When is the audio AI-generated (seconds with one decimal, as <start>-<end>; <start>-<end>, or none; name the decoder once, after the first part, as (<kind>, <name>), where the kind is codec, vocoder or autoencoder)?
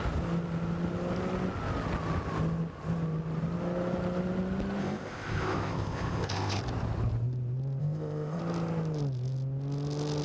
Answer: 4.8-6.6 (codec, ZipCodec); 7.8-8.4